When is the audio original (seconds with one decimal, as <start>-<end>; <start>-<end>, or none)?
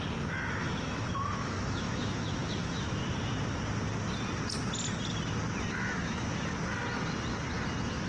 0.0-0.6; 3.0-5.8; 6.4-8.1